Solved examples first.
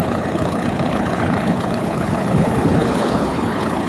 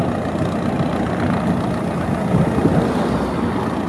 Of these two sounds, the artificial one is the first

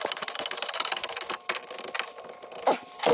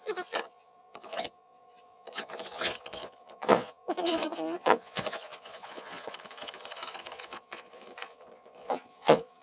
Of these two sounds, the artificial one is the second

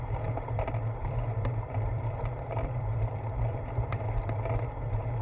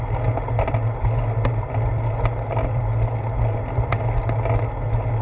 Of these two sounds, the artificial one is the first